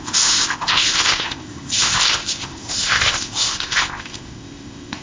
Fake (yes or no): yes